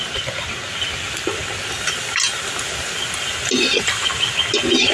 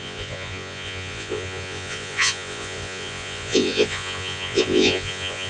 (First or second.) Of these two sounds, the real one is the first